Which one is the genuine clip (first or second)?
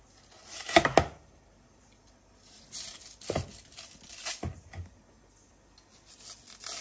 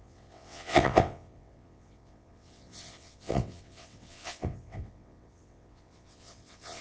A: first